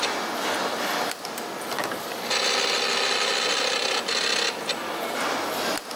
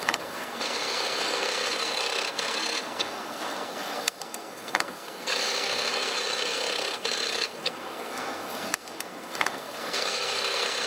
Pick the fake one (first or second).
second